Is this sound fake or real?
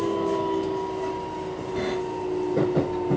real